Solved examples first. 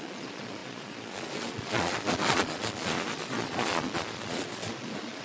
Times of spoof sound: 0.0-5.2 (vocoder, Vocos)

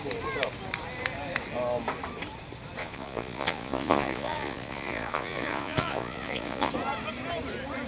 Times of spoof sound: 2.8-6.7 (vocoder, Vocos)

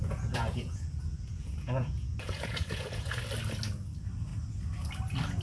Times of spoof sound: 0.0-3.2 (vocoder, Vocos)

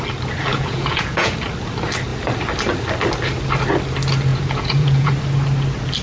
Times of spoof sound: 0.5-1.3 (vocoder, Vocos); 4.3-5.1

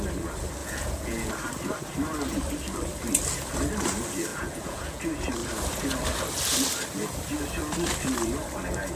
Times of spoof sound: 0.6-1.3 (vocoder, Vocos); 4.3-5.0

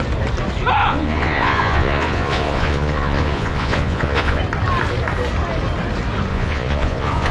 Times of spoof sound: 0.8-4.4 (vocoder, Vocos); 6.3-7.3

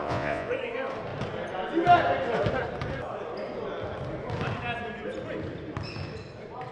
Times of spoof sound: 0.0-0.5 (vocoder, Vocos)

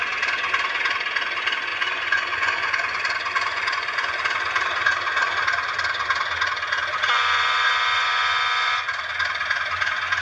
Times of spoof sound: 1.7-4.2 (vocoder, Vocos)